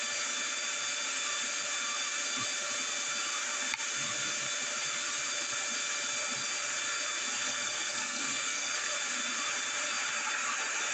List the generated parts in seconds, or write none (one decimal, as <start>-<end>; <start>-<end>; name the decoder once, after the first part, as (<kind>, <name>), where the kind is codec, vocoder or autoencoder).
7.4-8.9 (codec, SNAC)